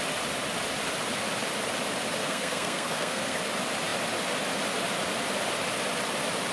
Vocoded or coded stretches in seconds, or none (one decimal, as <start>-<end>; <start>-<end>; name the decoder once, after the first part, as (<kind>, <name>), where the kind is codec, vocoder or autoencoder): 2.2-3.4 (codec, SNAC)